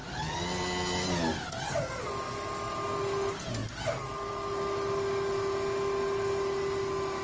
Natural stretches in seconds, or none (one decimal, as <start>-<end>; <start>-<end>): 0.0-7.2